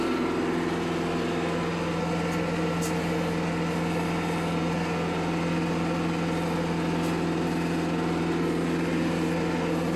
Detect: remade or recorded recorded